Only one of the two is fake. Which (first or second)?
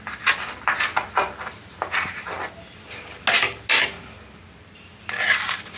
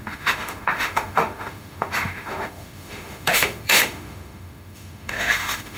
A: second